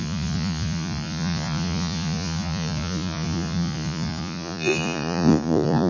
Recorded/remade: remade